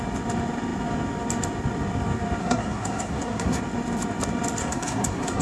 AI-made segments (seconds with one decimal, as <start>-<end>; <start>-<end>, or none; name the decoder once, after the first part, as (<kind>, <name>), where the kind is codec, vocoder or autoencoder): 2.4-3.6 (codec, SNAC); 4.6-5.4